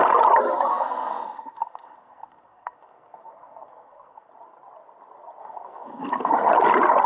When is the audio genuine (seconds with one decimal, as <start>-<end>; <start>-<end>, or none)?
0.0-0.7; 4.3-5.4; 6.3-7.1